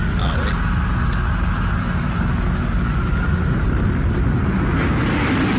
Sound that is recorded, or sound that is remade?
recorded